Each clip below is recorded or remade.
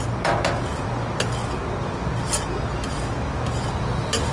recorded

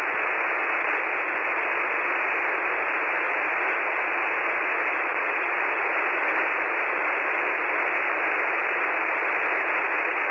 recorded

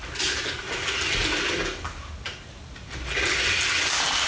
recorded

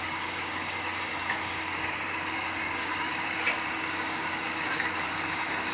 remade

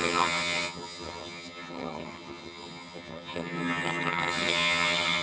remade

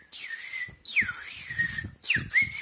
recorded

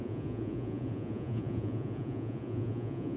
remade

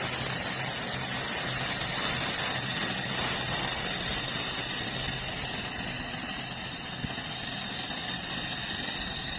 recorded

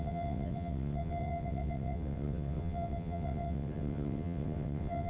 remade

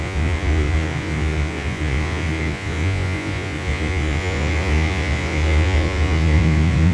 remade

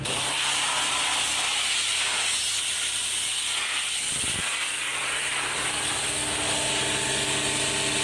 recorded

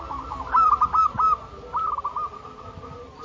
recorded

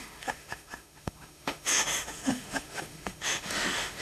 remade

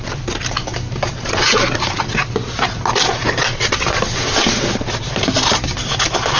recorded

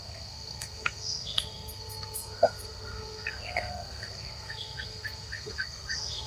remade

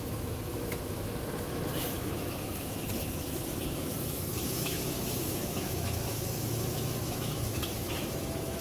remade